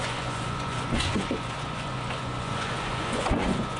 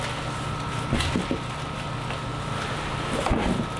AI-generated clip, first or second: first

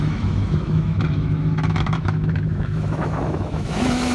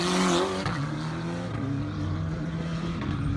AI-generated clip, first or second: first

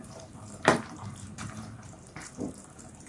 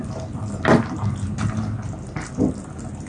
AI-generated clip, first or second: first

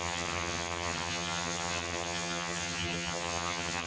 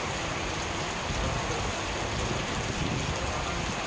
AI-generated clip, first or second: first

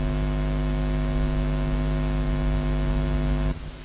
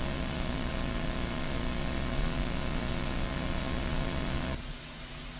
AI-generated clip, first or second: second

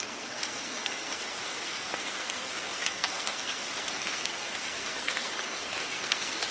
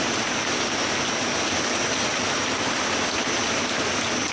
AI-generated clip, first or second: first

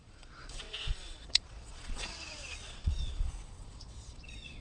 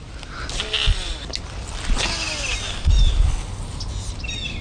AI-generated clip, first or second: first